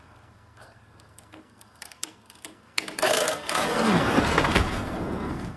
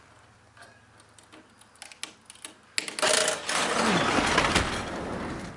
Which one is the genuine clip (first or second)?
second